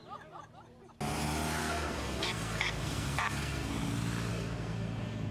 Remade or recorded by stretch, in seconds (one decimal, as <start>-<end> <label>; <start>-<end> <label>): 0.0-1.6 recorded; 1.6-3.7 remade; 3.7-4.3 recorded; 4.3-5.3 remade

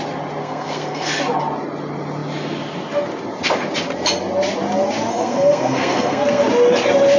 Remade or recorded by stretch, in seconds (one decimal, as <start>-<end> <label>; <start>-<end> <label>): 0.0-0.4 recorded; 0.4-1.1 remade; 1.1-5.1 recorded; 5.1-6.4 remade; 6.4-7.2 recorded

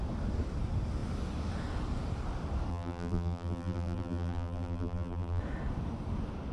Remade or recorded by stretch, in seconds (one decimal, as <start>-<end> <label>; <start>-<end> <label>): 0.0-2.7 recorded; 2.7-5.4 remade; 5.4-6.5 recorded

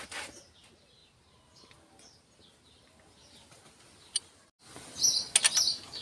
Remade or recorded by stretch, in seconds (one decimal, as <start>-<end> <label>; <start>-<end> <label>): 0.0-6.0 recorded

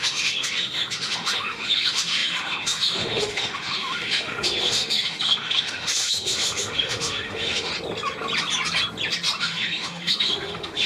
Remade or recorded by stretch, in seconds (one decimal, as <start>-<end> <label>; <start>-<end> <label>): 0.0-7.7 remade; 7.7-9.4 recorded; 9.4-10.9 remade